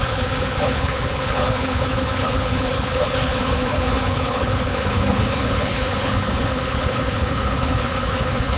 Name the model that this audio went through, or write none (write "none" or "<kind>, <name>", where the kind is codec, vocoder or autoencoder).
codec, HILCodec